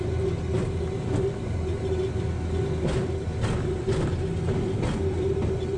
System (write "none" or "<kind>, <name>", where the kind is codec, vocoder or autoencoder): none